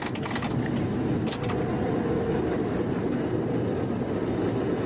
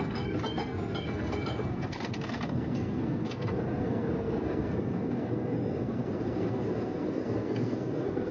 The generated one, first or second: second